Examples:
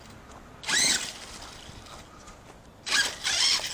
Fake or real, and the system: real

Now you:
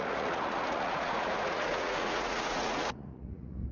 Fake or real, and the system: fake, vocoder, Vocos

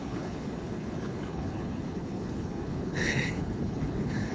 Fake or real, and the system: fake, codec, HILCodec